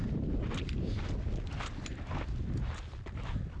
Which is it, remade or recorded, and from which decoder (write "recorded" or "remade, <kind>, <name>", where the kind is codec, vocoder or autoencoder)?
recorded